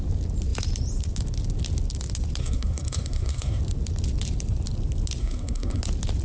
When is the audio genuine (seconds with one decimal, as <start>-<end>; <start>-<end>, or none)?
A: 0.0-2.4; 3.6-5.2; 5.8-6.2